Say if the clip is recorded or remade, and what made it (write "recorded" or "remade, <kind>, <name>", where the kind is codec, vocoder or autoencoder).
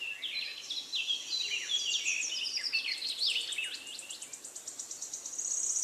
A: recorded